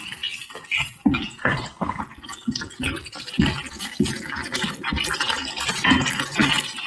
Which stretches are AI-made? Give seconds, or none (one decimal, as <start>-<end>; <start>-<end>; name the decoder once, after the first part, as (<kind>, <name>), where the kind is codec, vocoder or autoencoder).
1.4-2.0 (codec, HILCodec)